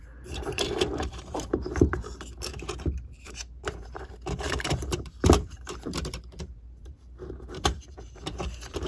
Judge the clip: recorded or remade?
remade